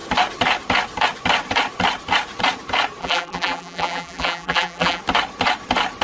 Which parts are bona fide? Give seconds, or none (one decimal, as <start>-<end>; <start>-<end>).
0.0-3.0; 5.0-6.0